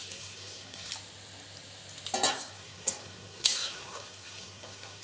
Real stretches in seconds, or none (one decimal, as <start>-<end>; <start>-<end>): 0.9-2.3